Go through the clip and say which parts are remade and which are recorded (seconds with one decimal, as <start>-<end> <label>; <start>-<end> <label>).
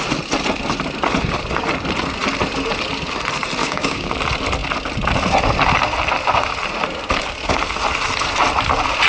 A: 0.0-3.6 recorded; 3.6-4.1 remade; 4.1-9.1 recorded